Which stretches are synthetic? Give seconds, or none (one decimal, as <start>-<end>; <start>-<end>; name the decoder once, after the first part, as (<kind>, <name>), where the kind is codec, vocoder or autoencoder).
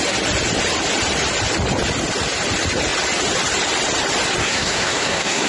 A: 4.4-5.5 (codec, SNAC)